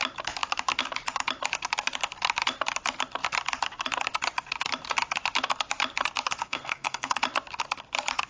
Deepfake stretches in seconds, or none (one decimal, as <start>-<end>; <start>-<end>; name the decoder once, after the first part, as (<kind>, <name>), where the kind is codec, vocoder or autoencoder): 6.4-7.2 (codec, SNAC)

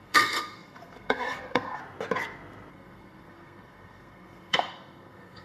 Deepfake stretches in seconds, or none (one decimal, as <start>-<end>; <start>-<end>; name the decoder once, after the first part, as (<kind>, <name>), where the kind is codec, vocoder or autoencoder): 0.0-1.8 (codec, SNAC); 2.7-5.4

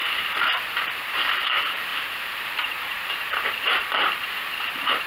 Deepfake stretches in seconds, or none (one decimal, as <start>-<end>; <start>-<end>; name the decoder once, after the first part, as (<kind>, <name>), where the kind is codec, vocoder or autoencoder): 0.0-5.1 (vocoder, BigVGAN v2)